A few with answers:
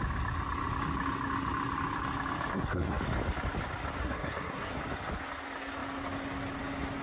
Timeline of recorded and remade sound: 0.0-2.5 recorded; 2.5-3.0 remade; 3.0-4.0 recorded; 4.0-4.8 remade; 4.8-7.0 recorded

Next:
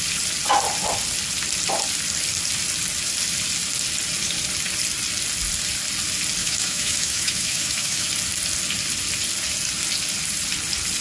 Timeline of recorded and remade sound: 0.0-6.4 recorded; 6.4-8.1 remade; 8.1-11.0 recorded

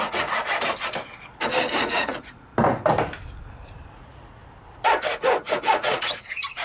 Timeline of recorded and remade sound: 0.0-0.5 remade; 0.5-1.8 recorded; 1.8-2.5 remade; 2.5-3.9 recorded; 3.9-4.4 remade; 4.4-5.5 recorded; 5.5-6.6 remade

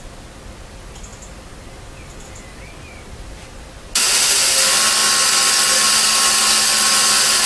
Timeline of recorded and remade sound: 0.0-7.5 recorded

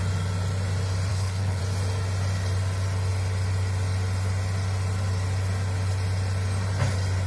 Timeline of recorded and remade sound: 0.0-1.1 recorded; 1.1-1.6 remade; 1.6-7.3 recorded